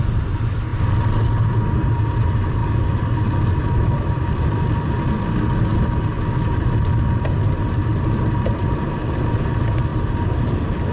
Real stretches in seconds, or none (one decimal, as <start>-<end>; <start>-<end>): 0.0-10.9